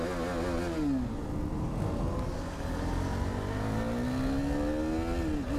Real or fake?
real